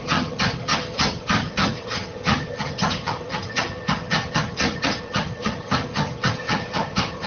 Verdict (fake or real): fake